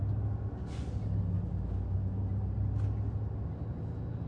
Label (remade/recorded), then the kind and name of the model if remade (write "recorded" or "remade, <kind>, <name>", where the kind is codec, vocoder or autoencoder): recorded